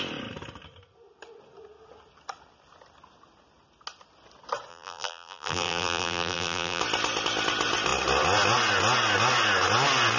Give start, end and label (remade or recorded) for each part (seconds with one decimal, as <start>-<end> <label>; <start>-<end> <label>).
0.0-4.7 recorded; 4.7-6.8 remade; 6.8-10.2 recorded

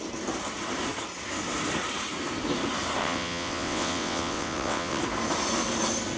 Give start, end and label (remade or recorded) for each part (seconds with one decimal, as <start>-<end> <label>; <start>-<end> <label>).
0.0-3.0 recorded; 3.0-5.0 remade; 5.0-6.2 recorded